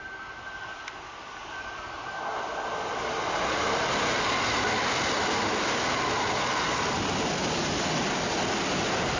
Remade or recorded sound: recorded